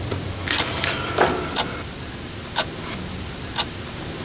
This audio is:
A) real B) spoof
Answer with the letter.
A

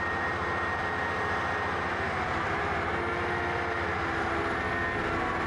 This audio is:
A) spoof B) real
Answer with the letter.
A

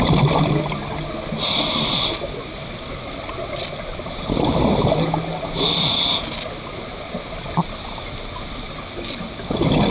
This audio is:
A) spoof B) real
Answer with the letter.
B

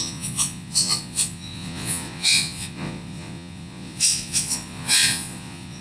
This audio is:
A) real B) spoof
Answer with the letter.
B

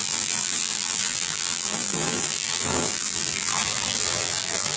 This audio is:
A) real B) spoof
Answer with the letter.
B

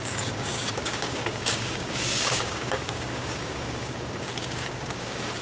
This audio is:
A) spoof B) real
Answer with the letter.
A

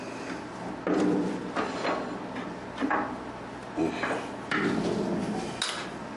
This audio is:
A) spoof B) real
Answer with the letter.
B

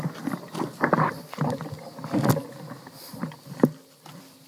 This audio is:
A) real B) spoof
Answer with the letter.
B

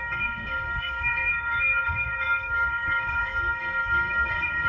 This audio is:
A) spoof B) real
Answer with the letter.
A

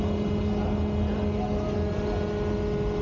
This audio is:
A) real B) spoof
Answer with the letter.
A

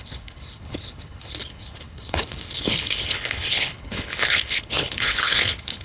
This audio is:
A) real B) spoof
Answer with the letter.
B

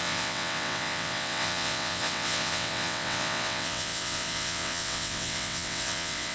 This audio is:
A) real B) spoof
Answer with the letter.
B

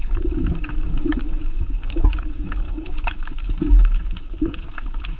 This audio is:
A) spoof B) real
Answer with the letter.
A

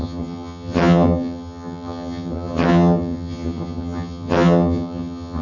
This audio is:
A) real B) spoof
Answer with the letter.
B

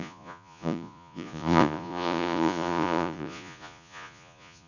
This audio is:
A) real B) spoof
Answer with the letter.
B